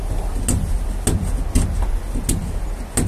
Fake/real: real